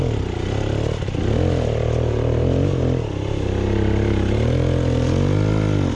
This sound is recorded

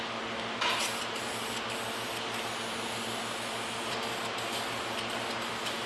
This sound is recorded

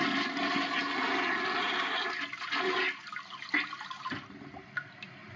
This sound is recorded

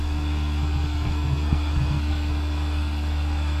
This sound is remade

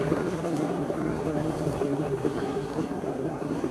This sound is remade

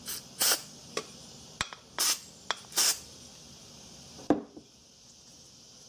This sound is recorded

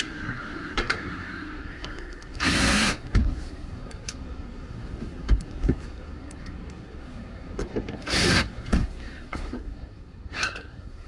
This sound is remade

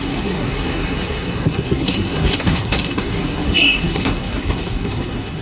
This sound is remade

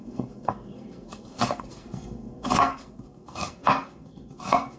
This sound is remade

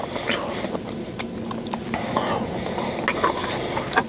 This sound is recorded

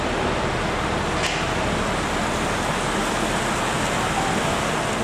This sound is recorded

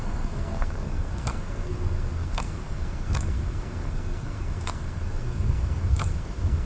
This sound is remade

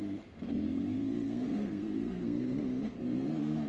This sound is remade